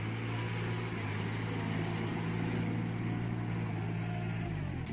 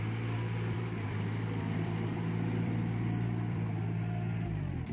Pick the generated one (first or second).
second